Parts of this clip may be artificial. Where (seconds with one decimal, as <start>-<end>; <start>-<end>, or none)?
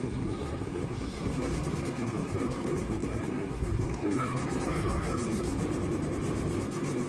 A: 0.0-5.6; 6.6-7.1